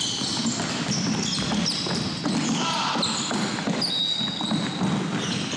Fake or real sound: real